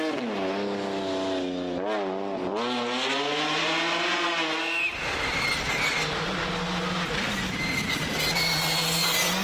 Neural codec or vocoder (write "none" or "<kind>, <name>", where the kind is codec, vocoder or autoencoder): none